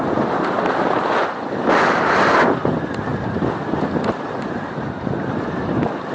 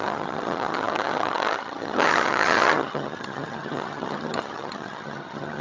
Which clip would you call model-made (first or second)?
second